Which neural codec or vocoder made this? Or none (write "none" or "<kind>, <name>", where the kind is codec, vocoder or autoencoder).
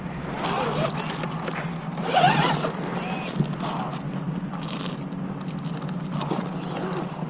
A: none